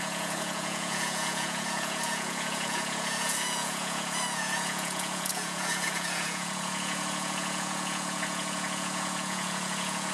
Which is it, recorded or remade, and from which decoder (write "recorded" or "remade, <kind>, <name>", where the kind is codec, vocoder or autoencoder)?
remade, vocoder, Vocos